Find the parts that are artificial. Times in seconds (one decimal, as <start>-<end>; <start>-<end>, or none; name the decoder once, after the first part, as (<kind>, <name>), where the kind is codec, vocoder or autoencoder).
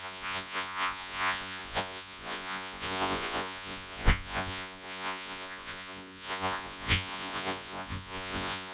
0.0-8.7 (vocoder, Vocos)